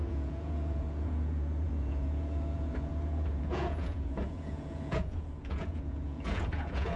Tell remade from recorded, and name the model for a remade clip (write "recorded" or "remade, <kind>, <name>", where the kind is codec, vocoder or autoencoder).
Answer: remade, vocoder, Vocos